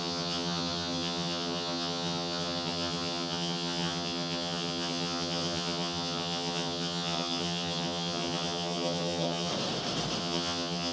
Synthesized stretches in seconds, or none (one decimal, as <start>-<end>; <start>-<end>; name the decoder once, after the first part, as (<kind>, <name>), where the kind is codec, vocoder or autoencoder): 0.0-9.5 (vocoder, HiFi-GAN); 10.2-10.9